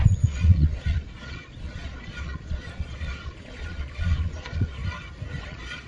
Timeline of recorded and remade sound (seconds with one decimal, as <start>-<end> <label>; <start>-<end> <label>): 0.0-4.8 remade; 4.8-5.4 recorded; 5.4-5.9 remade